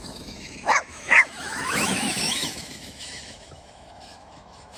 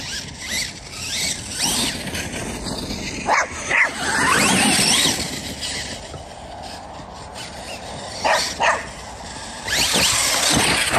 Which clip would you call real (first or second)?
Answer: second